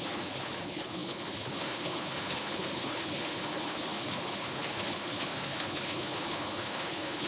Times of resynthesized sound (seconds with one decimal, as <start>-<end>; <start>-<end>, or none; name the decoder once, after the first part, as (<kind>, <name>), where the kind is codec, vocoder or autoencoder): 0.0-7.3 (codec, HILCodec)